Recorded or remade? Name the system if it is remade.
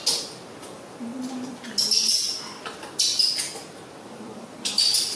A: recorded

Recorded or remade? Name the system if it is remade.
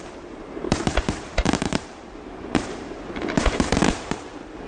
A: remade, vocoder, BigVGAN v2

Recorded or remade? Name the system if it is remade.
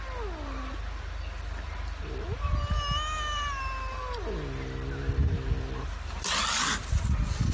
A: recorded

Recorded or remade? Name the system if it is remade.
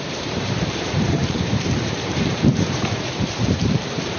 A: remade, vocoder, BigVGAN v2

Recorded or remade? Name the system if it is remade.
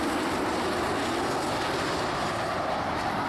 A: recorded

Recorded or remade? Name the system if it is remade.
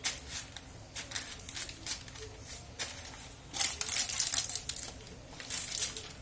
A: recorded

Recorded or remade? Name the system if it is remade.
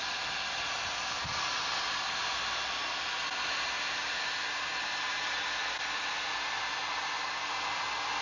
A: recorded